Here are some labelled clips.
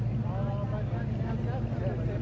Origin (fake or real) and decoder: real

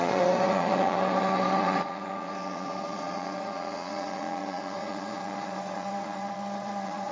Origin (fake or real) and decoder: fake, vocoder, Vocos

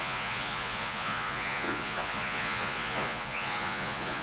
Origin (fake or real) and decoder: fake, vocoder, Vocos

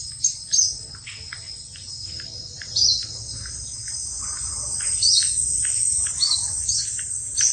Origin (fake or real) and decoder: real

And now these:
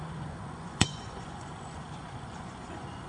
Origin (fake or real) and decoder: fake, vocoder, Vocos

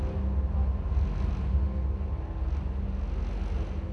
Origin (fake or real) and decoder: real